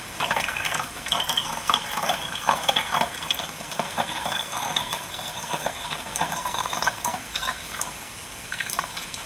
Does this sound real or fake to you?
fake